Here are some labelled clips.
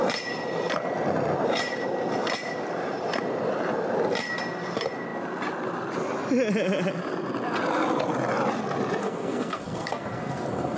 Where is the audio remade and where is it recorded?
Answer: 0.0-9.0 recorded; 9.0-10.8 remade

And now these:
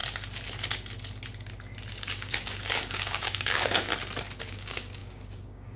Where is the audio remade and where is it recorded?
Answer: 0.0-2.0 recorded; 2.0-3.9 remade; 3.9-4.5 recorded; 4.5-5.8 remade

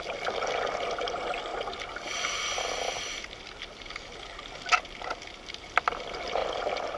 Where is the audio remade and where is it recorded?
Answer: 0.0-7.0 recorded